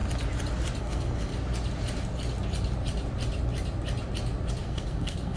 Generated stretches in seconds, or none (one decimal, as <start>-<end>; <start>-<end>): 0.8-1.3; 4.5-5.4